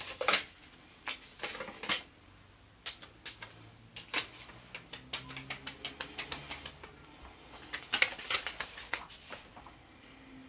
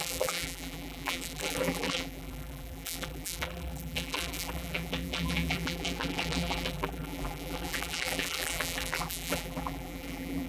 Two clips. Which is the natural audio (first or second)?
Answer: first